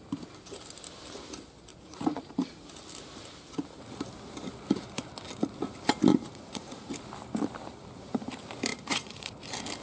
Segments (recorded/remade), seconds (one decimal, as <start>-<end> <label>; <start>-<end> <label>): 0.0-1.7 recorded; 1.7-2.7 remade; 2.7-6.1 recorded; 6.1-6.9 remade; 6.9-8.7 recorded; 8.7-9.3 remade; 9.3-9.8 recorded